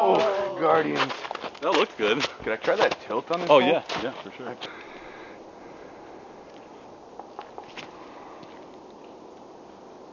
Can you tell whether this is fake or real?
real